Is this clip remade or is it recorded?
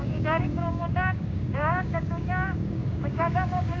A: remade